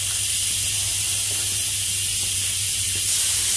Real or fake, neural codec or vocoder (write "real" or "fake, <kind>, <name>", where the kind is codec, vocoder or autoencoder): real